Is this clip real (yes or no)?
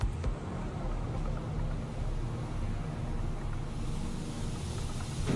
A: yes